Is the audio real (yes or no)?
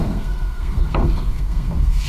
no